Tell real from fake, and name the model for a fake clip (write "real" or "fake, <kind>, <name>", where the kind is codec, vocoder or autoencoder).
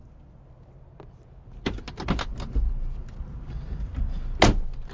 real